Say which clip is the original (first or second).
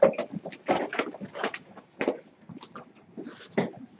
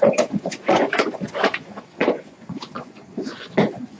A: first